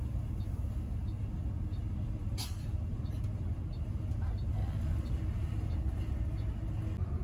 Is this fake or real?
real